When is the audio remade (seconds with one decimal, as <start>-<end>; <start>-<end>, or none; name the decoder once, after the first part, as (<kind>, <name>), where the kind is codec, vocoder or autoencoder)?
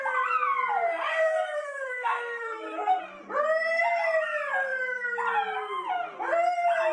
1.1-3.0 (codec, SNAC)